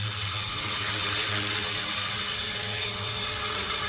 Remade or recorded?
remade